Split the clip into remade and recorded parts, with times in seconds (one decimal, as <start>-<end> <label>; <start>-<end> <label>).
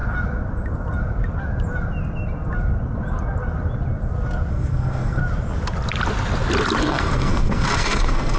0.0-4.5 recorded; 4.5-5.2 remade; 5.2-6.8 recorded; 6.8-8.4 remade